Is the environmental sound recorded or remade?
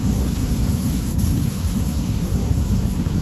remade